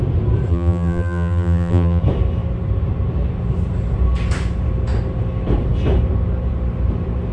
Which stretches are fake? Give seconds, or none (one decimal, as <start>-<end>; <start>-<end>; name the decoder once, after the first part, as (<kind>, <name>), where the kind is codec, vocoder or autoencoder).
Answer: 0.5-2.0 (vocoder, BigVGAN v2)